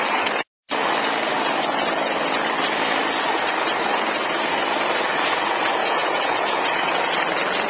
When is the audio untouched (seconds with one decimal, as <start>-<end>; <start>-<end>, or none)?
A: 0.0-5.8; 6.9-7.7